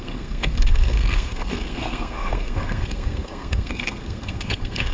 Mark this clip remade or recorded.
remade